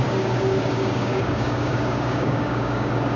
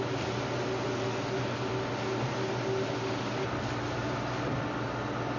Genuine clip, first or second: second